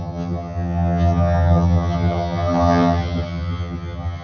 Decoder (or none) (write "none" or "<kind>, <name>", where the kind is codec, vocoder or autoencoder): vocoder, HiFi-GAN